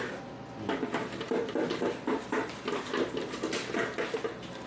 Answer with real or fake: real